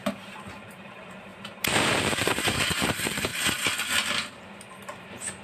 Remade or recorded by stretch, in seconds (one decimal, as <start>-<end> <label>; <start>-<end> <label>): 0.0-1.3 remade; 1.3-2.1 recorded; 2.1-3.3 remade; 3.3-4.8 recorded; 4.8-5.4 remade